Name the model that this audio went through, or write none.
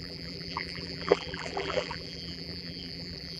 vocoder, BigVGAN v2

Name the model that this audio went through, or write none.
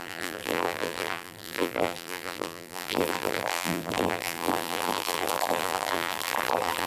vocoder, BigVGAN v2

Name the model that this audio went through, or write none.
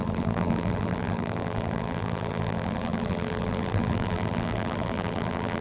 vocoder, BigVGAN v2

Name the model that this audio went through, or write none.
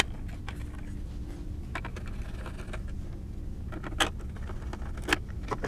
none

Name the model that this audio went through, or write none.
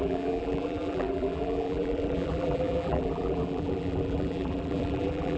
vocoder, BigVGAN v2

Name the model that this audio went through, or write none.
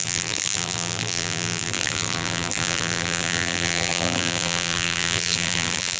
vocoder, BigVGAN v2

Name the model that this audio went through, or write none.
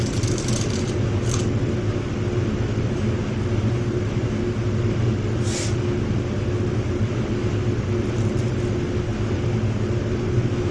none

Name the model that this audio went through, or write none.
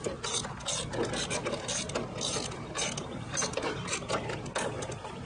none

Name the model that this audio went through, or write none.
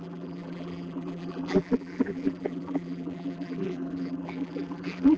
vocoder, BigVGAN v2